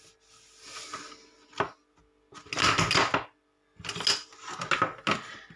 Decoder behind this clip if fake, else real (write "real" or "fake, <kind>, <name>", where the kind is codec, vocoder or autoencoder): real